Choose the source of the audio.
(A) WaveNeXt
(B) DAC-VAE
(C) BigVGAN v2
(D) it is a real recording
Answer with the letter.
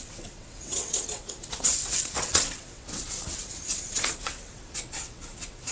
A